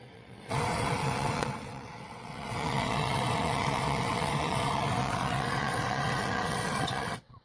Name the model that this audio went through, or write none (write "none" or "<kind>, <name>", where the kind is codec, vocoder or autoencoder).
vocoder, WaveNeXt